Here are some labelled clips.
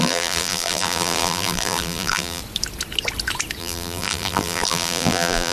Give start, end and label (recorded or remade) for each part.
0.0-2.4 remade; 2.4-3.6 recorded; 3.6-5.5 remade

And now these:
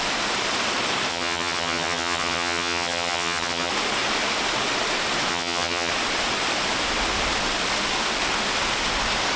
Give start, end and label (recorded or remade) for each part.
0.0-1.1 recorded; 1.1-3.7 remade; 3.7-5.3 recorded; 5.3-5.9 remade; 5.9-9.4 recorded

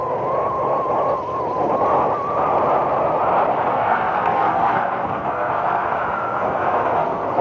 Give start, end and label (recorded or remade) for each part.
0.0-3.7 recorded; 3.7-7.4 remade

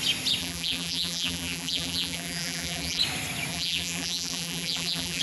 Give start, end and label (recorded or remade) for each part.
0.0-0.4 recorded; 0.4-3.0 remade; 3.0-3.5 recorded; 3.5-5.2 remade

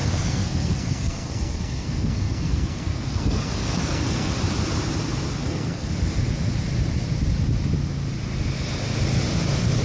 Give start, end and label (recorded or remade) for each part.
0.0-4.3 remade; 4.3-5.4 recorded; 5.4-5.9 remade; 5.9-9.8 recorded

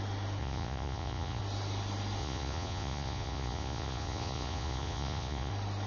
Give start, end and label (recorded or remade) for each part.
0.0-0.4 recorded; 0.4-1.4 remade; 1.4-2.2 recorded; 2.2-5.5 remade; 5.5-5.9 recorded

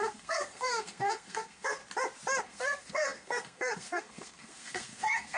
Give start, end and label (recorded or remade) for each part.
0.0-1.8 remade; 1.8-2.4 recorded; 2.4-5.4 remade

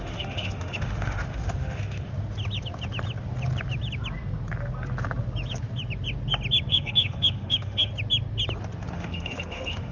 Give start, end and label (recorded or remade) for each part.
0.0-2.1 remade; 2.1-6.7 recorded; 6.7-7.9 remade; 7.9-8.9 recorded; 8.9-9.9 remade